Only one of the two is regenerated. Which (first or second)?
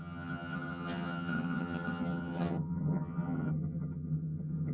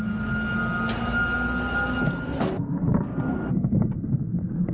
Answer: first